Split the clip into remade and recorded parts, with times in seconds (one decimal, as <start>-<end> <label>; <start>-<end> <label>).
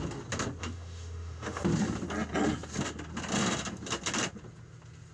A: 0.0-0.6 recorded; 0.6-1.6 remade; 1.6-5.1 recorded